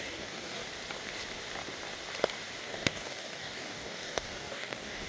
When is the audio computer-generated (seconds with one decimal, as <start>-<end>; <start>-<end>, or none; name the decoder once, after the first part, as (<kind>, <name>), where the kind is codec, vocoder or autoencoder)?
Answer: 0.0-0.6 (codec, DAC); 2.6-5.1